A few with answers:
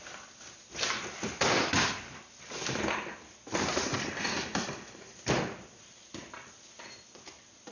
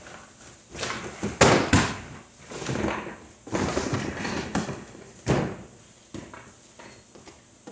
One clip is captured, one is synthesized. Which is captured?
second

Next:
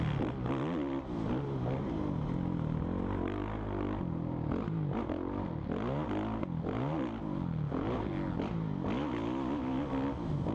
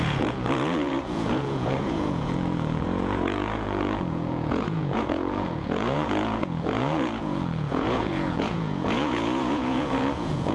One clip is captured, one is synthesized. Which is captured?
first